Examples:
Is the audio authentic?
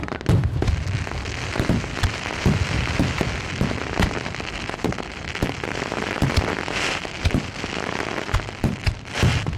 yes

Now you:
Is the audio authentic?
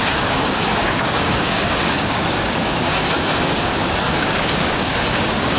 no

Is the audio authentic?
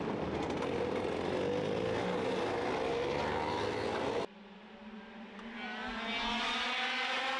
yes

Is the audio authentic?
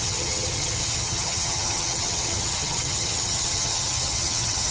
no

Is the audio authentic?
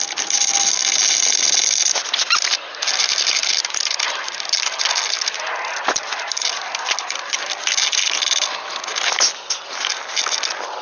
yes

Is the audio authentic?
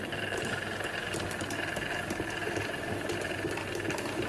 yes